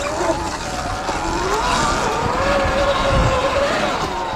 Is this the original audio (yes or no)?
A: yes